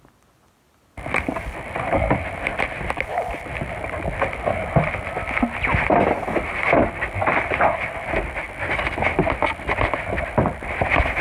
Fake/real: real